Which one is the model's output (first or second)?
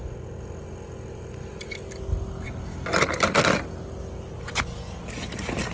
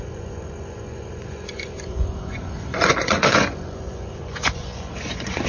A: second